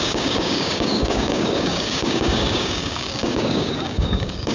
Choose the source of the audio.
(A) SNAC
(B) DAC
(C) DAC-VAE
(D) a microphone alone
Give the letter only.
B